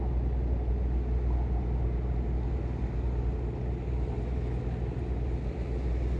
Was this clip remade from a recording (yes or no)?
no